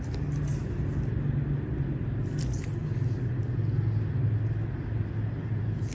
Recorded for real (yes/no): yes